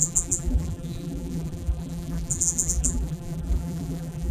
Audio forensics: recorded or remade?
remade